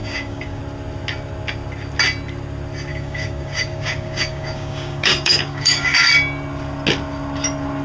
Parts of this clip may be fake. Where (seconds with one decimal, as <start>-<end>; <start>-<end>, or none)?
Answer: 0.0-0.6; 2.9-6.1

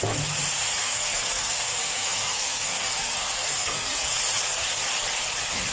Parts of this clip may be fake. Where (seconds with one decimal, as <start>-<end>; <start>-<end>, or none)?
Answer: 0.8-4.2

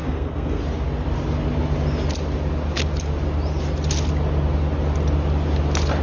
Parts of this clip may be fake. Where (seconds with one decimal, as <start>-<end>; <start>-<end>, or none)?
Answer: 0.0-0.6

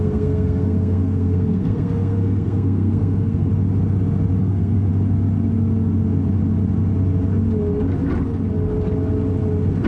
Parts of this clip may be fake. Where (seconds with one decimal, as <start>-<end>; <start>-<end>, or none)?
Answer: 0.0-3.5; 4.4-4.9

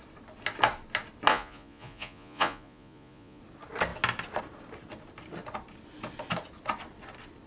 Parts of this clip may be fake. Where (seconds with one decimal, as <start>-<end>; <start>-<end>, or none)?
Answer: 1.3-3.4

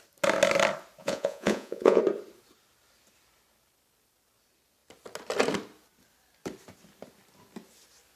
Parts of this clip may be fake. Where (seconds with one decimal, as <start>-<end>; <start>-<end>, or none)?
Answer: 1.0-2.0